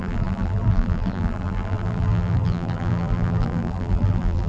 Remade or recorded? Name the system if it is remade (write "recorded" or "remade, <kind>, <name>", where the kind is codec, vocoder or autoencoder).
remade, vocoder, BigVGAN v2